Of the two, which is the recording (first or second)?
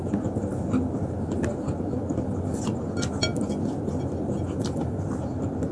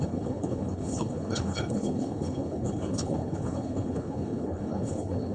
first